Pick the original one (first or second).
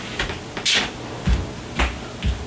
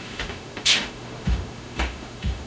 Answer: first